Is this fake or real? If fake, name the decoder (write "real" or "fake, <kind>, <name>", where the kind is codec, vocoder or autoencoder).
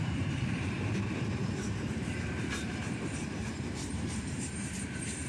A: fake, vocoder, BigVGAN v2